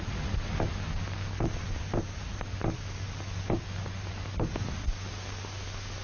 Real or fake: real